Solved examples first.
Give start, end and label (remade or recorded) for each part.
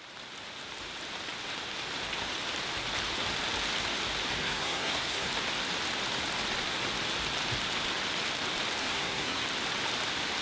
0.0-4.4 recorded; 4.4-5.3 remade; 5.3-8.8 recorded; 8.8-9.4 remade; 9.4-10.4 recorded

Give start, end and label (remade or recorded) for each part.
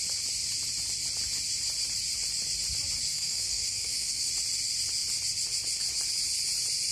0.0-3.1 recorded; 3.1-4.3 remade; 4.3-6.9 recorded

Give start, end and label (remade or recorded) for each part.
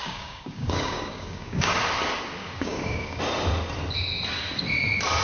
0.0-1.8 remade; 1.8-2.4 recorded; 2.4-3.2 remade; 3.2-5.2 recorded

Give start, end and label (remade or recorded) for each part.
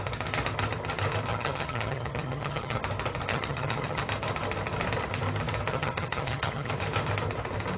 0.0-1.3 recorded; 1.3-2.8 remade; 2.8-3.3 recorded; 3.3-4.0 remade; 4.0-5.7 recorded; 5.7-6.7 remade; 6.7-7.8 recorded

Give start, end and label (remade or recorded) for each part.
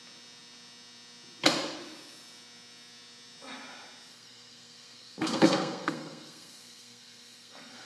0.0-4.1 recorded; 4.1-7.9 remade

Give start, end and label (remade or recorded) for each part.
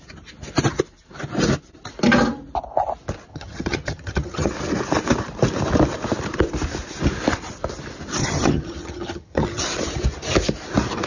0.0-3.3 recorded; 3.3-4.5 remade; 4.5-8.2 recorded; 8.2-9.6 remade; 9.6-11.1 recorded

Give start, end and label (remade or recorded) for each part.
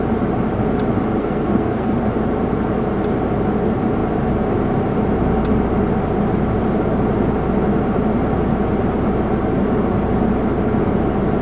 0.0-1.2 recorded; 1.2-1.9 remade; 1.9-11.4 recorded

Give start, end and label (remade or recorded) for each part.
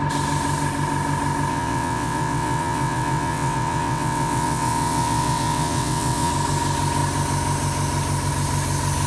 0.0-1.5 recorded; 1.5-6.3 remade; 6.3-9.1 recorded